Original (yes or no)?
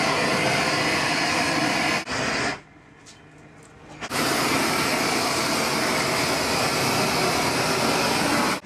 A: yes